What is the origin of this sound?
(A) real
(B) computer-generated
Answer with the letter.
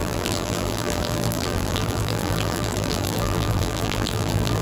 B